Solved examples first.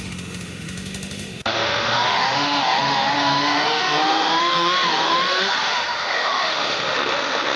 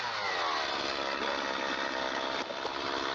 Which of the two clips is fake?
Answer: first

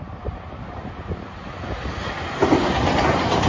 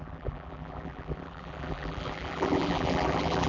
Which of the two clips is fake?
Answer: second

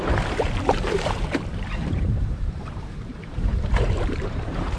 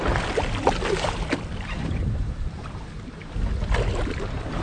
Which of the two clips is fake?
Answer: first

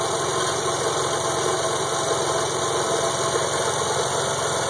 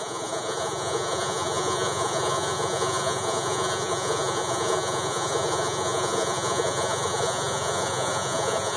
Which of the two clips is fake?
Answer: second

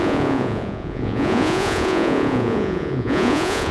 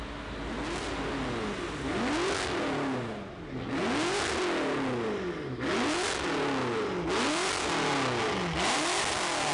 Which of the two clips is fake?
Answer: first